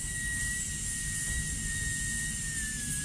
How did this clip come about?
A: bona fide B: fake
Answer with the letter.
A